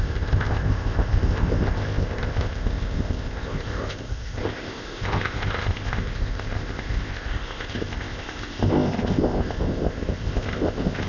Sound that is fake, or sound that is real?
fake